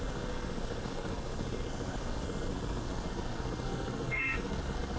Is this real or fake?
fake